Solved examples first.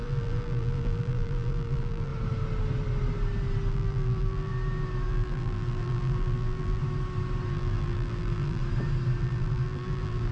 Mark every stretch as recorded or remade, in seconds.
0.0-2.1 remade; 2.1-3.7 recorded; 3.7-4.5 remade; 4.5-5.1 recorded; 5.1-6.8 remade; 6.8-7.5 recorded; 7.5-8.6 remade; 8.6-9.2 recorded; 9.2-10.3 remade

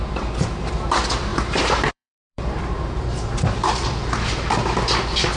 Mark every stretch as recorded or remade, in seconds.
0.0-1.3 recorded; 1.3-4.5 remade; 4.5-5.4 recorded